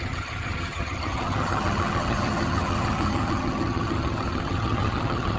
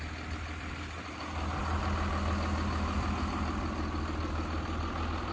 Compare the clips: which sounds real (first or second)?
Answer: second